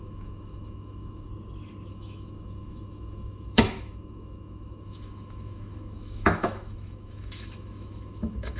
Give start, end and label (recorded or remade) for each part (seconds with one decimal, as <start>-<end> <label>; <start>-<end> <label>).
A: 0.0-1.3 remade; 1.3-1.9 recorded; 1.9-8.6 remade